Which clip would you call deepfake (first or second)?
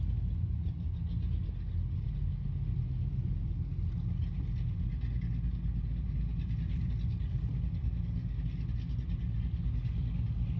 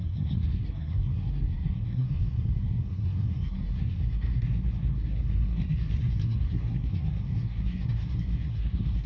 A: second